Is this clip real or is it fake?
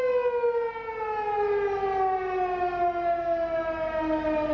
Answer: real